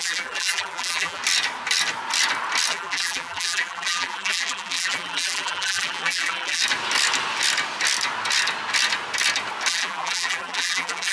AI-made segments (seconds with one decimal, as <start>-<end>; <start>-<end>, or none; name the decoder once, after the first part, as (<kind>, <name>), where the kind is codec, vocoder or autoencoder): 0.0-1.2 (vocoder, BigVGAN v2); 2.7-6.6; 9.7-11.1